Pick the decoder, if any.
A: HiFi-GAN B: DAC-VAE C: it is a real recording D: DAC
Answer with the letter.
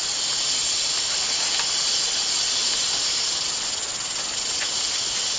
C